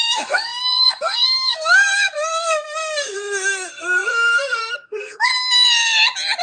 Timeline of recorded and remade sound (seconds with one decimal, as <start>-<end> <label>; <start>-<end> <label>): 0.0-5.3 remade; 5.3-6.4 recorded